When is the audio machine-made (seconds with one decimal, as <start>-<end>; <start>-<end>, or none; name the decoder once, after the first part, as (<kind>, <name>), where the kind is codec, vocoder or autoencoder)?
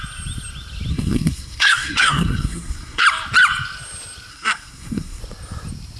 0.9-3.0 (codec, SNAC); 4.3-5.2